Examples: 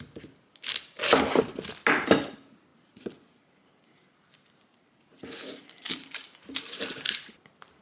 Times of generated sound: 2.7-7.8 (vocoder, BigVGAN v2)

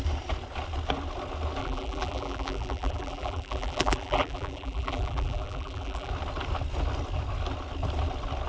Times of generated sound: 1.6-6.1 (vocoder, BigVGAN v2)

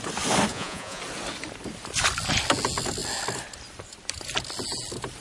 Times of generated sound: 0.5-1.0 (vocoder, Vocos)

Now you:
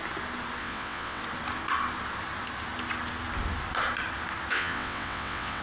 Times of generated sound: 0.6-1.2 (vocoder, WaveNeXt); 4.5-5.6

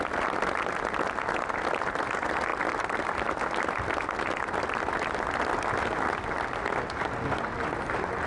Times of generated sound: none

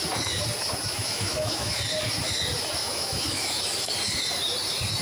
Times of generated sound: 1.0-1.8 (autoencoder, DAC-VAE); 2.8-3.6

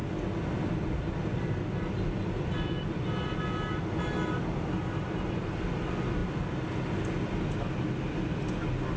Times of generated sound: none

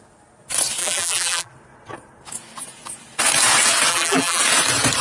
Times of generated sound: 0.8-1.5 (vocoder, BigVGAN v2); 3.9-4.4